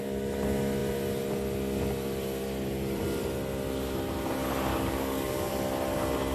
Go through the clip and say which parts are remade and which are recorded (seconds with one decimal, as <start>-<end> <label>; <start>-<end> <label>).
0.0-4.7 recorded; 4.7-5.5 remade; 5.5-6.3 recorded